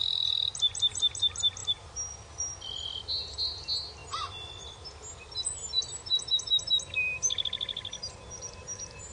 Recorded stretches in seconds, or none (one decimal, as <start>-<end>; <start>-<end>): 0.0-9.1